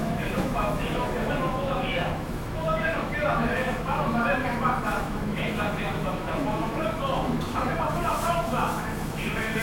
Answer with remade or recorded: remade